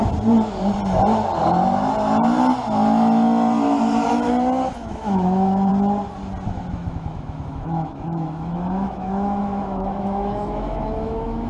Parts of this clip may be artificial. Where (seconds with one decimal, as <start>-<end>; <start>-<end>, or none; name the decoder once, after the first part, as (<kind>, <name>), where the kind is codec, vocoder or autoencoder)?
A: 4.7-5.7 (autoencoder, DAC-VAE); 6.7-11.5